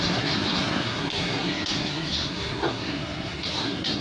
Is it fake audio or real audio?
fake